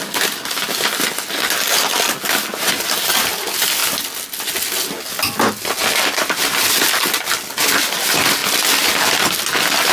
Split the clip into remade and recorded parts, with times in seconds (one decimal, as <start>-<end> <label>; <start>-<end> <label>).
0.0-9.9 recorded